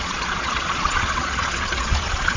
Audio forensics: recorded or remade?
remade